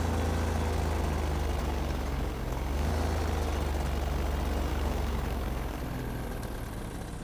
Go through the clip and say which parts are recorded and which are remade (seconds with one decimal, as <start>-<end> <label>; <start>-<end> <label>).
0.0-1.6 recorded; 1.6-2.9 remade; 2.9-4.7 recorded; 4.7-5.8 remade; 5.8-7.2 recorded